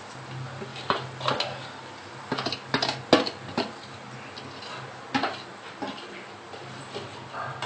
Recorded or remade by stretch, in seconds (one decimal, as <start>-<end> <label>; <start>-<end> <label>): 0.0-5.5 recorded; 5.5-6.8 remade; 6.8-7.7 recorded